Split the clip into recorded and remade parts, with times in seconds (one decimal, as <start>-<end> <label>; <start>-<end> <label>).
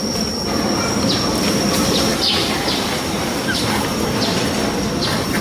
0.0-2.1 recorded; 2.1-5.4 remade